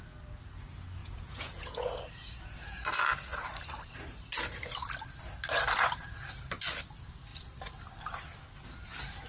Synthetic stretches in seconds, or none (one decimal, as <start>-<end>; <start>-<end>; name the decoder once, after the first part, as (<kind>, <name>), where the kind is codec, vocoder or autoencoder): 1.0-2.8 (vocoder, Vocos)